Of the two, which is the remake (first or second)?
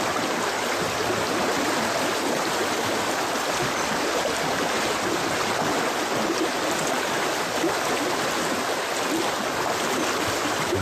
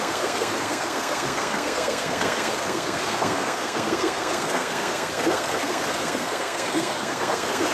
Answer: second